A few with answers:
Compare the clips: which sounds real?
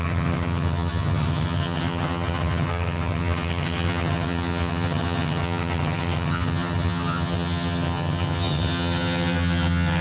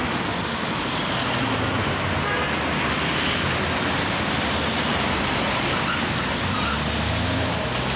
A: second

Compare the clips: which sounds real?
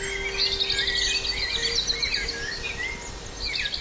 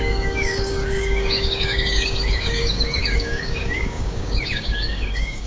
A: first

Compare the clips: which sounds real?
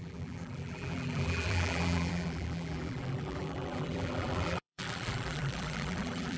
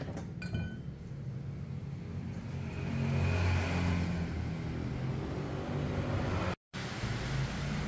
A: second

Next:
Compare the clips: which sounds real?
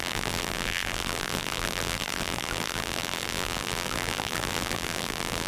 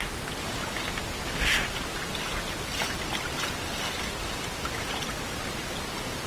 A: second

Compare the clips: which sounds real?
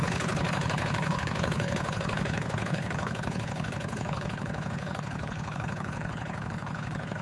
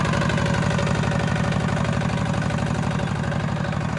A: second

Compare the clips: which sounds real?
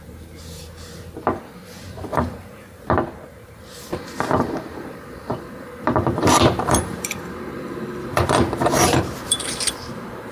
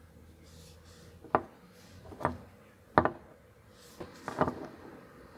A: second